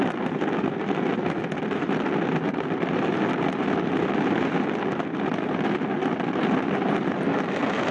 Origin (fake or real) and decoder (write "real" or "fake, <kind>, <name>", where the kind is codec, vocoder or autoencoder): real